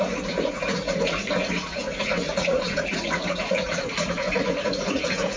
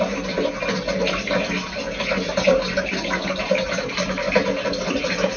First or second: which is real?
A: second